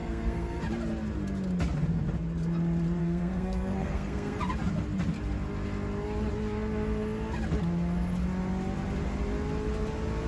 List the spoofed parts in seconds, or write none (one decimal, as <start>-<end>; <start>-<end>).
0.0-0.6; 3.0-4.4